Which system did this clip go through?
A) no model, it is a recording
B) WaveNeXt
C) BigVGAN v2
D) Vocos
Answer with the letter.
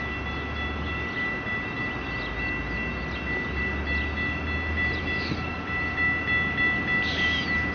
A